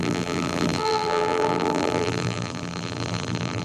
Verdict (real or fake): fake